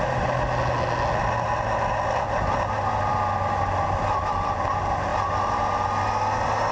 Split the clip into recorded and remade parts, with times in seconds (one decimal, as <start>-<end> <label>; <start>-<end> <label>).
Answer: 0.0-6.7 recorded